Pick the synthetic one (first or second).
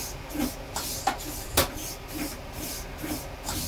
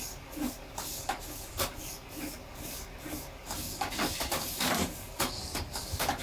second